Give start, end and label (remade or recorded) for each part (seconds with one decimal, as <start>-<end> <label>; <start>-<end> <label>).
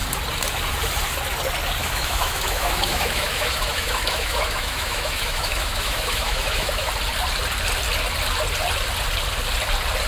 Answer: 0.0-1.8 recorded; 1.8-6.9 remade; 6.9-10.1 recorded